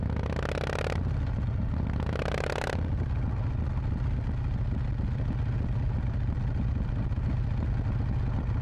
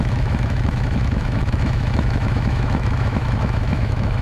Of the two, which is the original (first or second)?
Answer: first